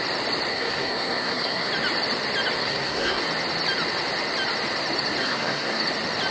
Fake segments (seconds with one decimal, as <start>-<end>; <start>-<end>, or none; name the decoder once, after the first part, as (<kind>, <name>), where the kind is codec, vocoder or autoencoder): 0.5-1.7 (codec, SNAC); 2.6-3.2; 5.2-5.8